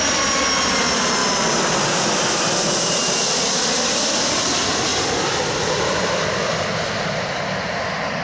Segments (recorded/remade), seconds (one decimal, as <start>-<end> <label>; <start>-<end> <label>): 0.0-8.2 recorded